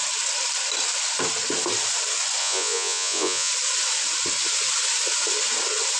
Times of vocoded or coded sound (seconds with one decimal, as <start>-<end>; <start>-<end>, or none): 2.4-3.5